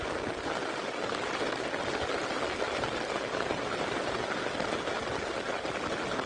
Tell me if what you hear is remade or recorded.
recorded